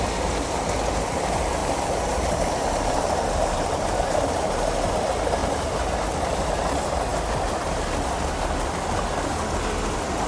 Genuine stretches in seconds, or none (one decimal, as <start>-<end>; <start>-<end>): 0.0-1.6; 4.9-5.4; 6.0-10.3